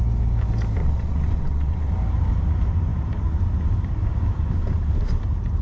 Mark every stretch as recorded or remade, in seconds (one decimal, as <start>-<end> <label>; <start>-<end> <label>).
0.0-0.8 recorded; 0.8-1.9 remade; 1.9-5.6 recorded